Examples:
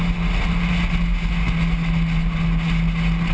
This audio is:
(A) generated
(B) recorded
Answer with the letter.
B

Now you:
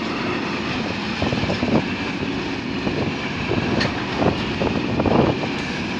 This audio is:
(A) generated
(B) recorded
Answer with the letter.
B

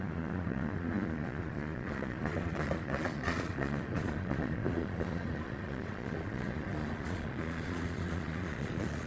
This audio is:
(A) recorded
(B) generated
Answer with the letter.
B